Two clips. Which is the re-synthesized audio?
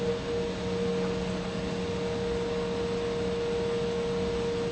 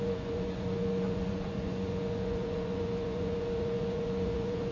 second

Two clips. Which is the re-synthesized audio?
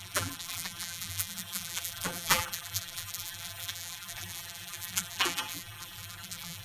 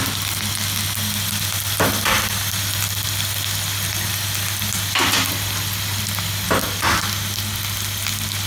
first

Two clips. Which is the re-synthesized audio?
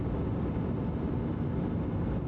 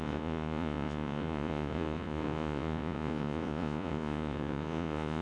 second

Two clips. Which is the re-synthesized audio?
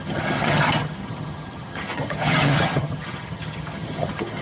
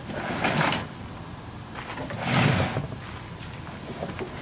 first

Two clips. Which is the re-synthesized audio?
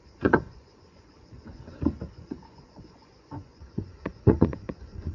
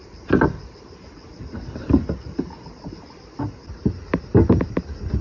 first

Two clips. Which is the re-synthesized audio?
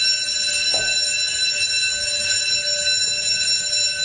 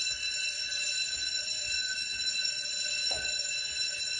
second